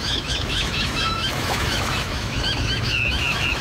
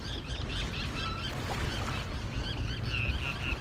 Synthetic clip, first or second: first